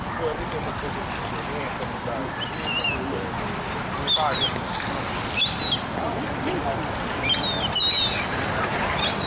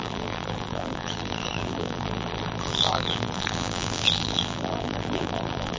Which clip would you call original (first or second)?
first